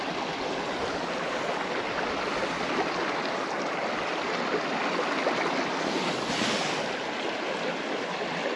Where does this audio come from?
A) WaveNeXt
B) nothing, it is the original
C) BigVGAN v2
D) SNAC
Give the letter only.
B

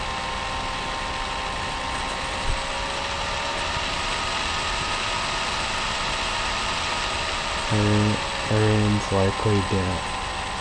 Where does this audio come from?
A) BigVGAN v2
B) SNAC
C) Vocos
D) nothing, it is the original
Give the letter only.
D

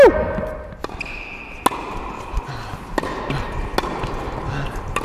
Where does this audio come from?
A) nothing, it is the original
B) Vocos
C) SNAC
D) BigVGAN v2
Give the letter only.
A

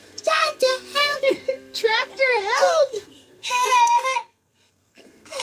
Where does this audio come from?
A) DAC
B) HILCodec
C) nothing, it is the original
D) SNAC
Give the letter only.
D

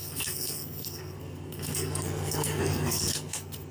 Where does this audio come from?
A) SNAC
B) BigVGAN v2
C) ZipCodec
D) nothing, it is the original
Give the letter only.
A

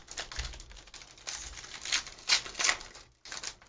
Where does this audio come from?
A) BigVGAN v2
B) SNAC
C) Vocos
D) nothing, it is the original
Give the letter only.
D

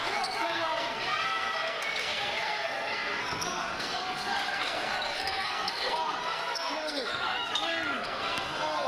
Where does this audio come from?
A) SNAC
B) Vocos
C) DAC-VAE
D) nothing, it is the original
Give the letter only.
A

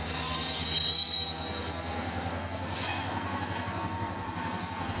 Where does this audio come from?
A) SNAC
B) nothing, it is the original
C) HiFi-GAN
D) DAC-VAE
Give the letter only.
A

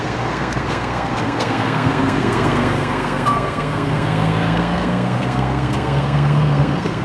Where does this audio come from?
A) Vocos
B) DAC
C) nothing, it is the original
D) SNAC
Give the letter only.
D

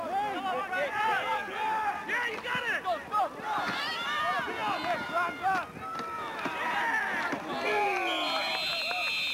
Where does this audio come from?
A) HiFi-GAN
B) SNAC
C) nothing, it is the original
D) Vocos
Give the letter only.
C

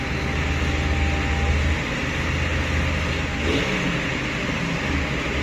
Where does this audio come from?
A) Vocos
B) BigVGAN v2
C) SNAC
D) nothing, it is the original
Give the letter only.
D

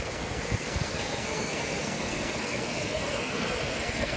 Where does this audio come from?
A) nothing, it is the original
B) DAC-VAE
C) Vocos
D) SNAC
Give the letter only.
D